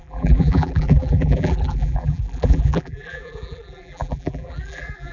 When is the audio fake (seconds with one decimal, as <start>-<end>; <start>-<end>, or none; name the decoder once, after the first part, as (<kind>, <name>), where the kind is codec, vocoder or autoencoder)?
0.0-5.1 (vocoder, BigVGAN v2)